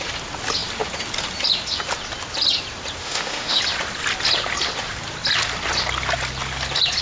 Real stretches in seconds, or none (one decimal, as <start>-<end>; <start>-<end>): 0.0-3.0; 3.6-7.0